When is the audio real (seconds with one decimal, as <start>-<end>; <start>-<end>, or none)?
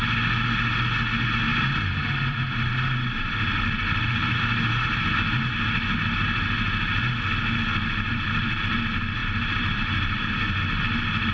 0.0-1.5; 5.1-9.2; 10.6-11.3